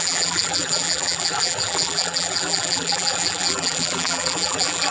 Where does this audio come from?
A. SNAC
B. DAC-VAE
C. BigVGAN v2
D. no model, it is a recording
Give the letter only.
C